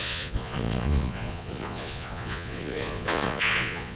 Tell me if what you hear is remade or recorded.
remade